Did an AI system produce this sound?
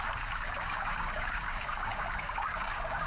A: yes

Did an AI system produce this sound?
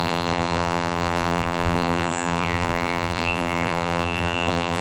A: yes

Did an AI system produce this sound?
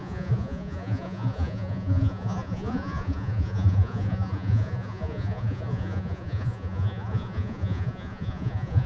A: yes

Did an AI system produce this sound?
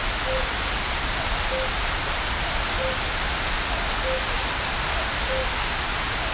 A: no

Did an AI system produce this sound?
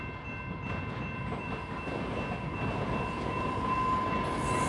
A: no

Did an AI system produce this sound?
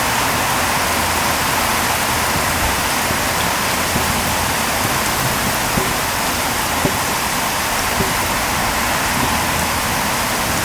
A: no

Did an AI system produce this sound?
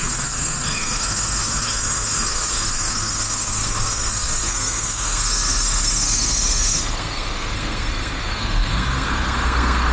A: yes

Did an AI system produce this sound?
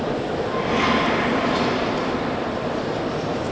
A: yes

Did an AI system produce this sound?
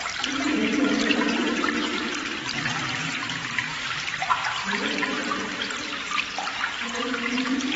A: yes